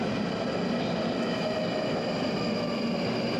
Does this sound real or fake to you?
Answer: real